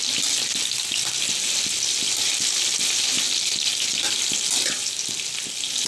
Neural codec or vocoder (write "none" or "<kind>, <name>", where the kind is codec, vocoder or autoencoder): none